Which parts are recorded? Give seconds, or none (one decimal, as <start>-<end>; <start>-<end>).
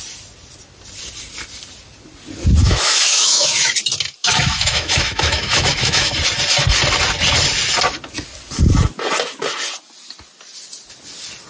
0.0-2.6; 3.7-4.2; 6.1-11.5